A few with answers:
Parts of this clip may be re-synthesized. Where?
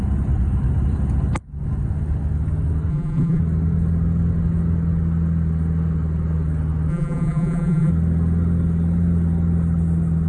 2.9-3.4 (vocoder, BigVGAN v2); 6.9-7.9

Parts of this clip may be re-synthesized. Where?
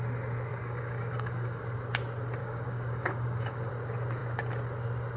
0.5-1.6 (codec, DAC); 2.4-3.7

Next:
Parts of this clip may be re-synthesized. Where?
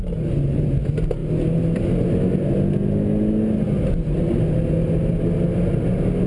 none